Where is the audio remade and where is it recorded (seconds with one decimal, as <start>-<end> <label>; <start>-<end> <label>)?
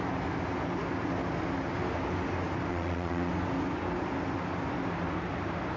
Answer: 0.0-2.7 recorded; 2.7-3.3 remade; 3.3-5.8 recorded